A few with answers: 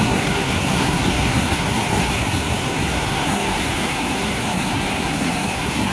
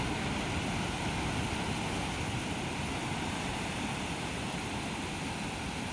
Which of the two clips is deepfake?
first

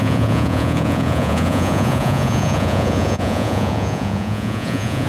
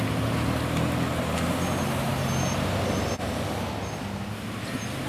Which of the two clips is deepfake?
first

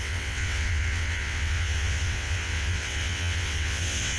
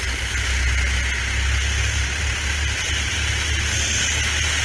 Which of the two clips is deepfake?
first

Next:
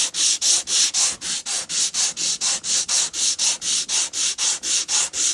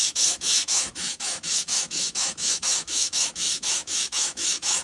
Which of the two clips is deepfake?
second